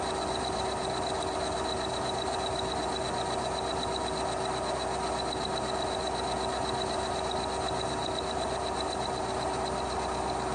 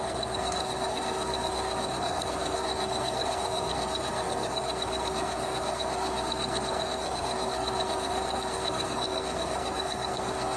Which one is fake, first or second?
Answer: second